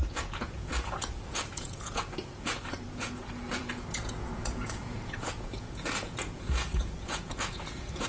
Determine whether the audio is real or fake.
fake